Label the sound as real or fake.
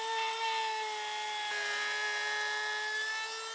real